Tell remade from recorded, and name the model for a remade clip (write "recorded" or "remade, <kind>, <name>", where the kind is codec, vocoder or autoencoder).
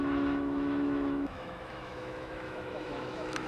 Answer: remade, autoencoder, DAC-VAE